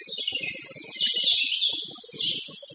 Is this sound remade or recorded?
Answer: recorded